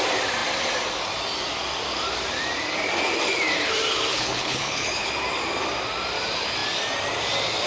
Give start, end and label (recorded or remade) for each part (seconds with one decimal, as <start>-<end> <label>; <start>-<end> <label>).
0.0-4.1 recorded; 4.1-5.1 remade; 5.1-7.7 recorded